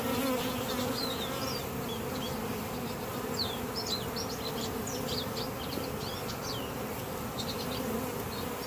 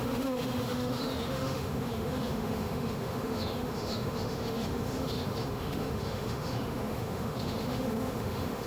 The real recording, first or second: first